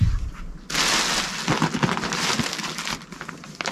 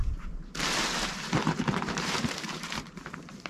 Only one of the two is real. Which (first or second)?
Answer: first